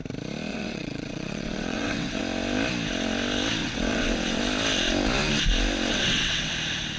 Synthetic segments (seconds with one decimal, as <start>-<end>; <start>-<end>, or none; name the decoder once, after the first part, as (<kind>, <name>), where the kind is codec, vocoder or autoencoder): 0.5-2.2 (vocoder, WaveNeXt); 3.6-4.4; 5.9-6.5